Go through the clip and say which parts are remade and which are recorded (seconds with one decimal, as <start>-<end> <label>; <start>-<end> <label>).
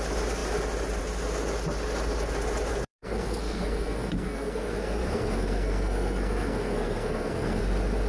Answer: 0.0-2.7 recorded; 2.7-7.6 remade; 7.6-8.1 recorded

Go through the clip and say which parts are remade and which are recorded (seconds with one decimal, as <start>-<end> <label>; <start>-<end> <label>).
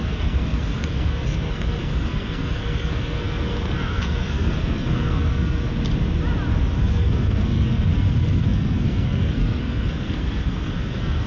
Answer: 0.0-5.7 remade; 5.7-6.8 recorded; 6.8-11.3 remade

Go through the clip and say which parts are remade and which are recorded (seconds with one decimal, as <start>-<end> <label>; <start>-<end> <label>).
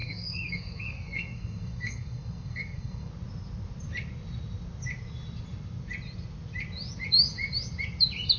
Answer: 0.0-3.1 remade; 3.1-8.4 recorded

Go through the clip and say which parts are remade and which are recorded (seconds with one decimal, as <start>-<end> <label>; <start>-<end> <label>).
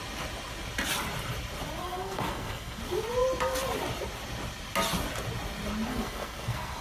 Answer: 0.0-1.8 recorded; 1.8-2.8 remade; 2.8-5.9 recorded; 5.9-6.8 remade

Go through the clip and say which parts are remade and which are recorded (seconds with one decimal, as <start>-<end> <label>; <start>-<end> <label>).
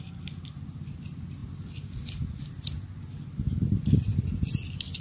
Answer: 0.0-5.0 recorded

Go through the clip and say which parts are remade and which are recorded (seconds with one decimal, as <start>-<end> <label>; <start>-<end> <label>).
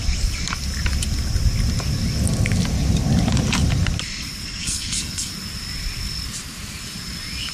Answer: 0.0-4.6 recorded; 4.6-5.3 remade; 5.3-7.5 recorded